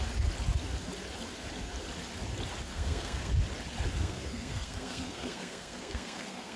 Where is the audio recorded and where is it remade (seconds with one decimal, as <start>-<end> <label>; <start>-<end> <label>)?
0.0-2.7 recorded; 2.7-3.3 remade; 3.3-4.0 recorded; 4.0-6.6 remade